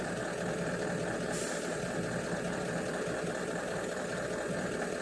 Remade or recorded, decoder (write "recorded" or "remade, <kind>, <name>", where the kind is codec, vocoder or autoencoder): remade, vocoder, BigVGAN v2